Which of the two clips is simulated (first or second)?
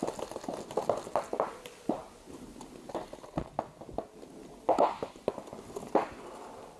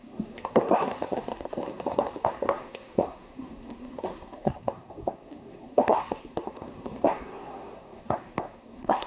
second